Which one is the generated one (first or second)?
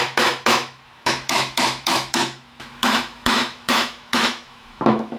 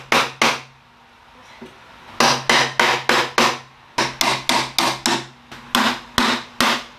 first